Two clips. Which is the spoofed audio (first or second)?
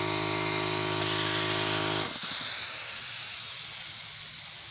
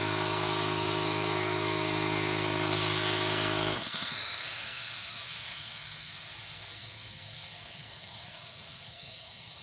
second